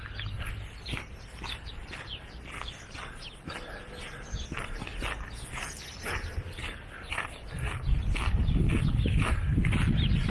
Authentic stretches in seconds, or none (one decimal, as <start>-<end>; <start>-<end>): 0.0-10.3